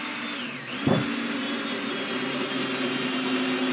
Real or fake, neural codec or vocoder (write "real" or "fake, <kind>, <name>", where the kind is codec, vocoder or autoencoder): real